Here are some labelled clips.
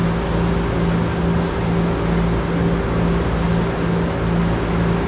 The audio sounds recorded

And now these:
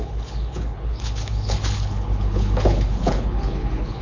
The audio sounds remade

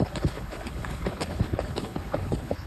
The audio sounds remade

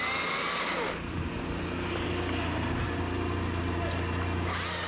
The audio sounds recorded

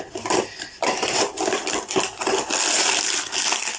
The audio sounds recorded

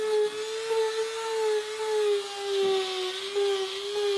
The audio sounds recorded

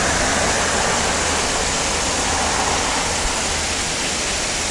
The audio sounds recorded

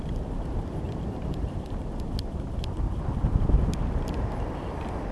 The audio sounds recorded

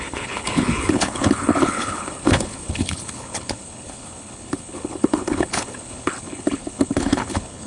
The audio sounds remade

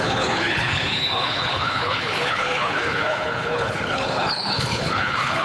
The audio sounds remade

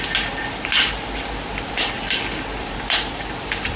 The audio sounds recorded